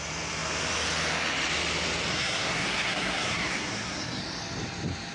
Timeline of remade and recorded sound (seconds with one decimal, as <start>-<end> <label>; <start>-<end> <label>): 0.0-2.1 recorded; 2.1-4.2 remade; 4.2-5.1 recorded